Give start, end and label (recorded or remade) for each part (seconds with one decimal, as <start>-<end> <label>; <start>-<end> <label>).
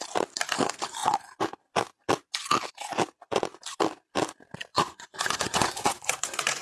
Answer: 0.0-4.7 recorded; 4.7-6.6 remade